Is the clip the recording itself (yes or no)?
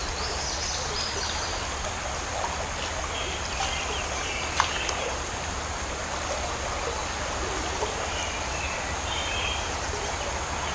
yes